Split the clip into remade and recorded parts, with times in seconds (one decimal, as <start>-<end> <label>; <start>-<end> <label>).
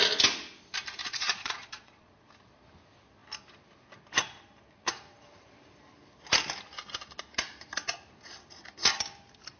0.0-1.0 recorded; 1.0-2.3 remade; 2.3-9.6 recorded